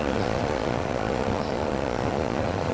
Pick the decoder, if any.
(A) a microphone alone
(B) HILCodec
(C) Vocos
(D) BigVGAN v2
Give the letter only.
C